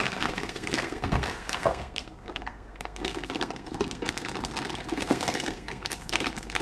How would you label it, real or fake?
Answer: fake